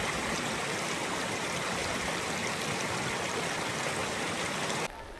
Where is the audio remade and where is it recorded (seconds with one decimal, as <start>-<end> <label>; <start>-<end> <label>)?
0.0-5.2 recorded